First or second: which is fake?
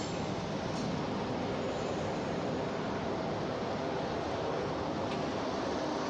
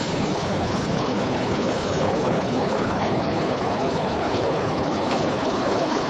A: second